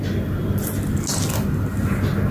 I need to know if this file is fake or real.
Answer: real